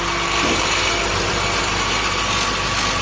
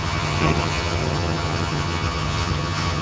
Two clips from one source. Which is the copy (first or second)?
second